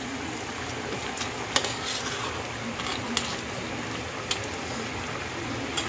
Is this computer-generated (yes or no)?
no